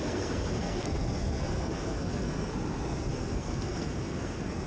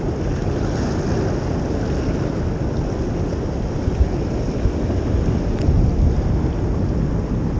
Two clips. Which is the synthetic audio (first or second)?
first